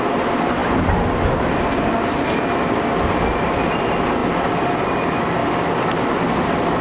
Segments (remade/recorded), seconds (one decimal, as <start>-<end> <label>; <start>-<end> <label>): 0.0-6.8 recorded